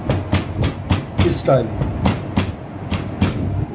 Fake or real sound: real